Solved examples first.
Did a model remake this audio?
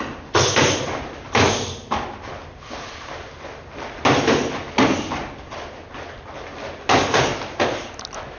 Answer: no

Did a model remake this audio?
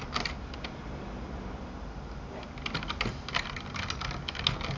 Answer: no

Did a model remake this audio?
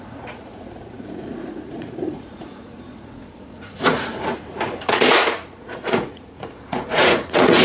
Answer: yes